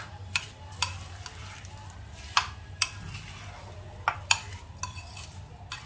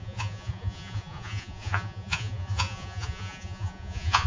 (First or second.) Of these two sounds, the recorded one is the first